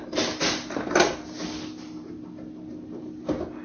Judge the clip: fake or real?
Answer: real